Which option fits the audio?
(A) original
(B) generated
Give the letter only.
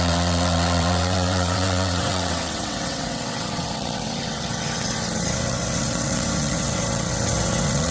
B